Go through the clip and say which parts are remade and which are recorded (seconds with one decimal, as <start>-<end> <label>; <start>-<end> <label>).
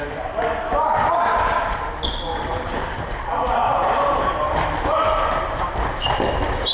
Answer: 0.0-6.7 recorded